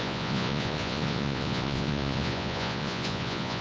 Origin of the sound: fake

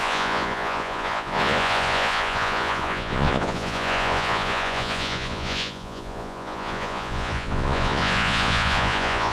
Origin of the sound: fake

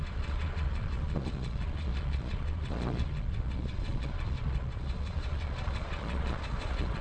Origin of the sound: fake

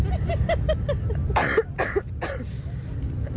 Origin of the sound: real